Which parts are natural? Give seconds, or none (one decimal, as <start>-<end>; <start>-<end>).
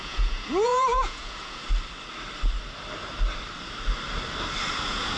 1.6-4.7